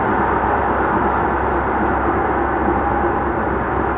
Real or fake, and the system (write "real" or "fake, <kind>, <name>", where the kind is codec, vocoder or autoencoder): real